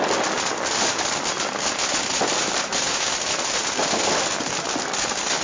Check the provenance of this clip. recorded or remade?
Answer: recorded